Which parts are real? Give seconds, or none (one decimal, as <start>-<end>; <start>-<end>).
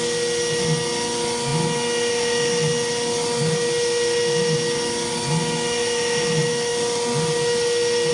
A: 0.0-8.1